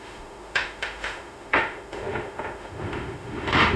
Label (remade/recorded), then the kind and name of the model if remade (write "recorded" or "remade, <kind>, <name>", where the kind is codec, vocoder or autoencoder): remade, autoencoder, DAC-VAE